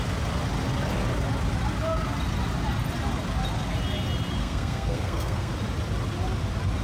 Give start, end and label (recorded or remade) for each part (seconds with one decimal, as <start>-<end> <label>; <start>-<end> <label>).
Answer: 0.0-4.4 recorded; 4.4-5.5 remade; 5.5-6.8 recorded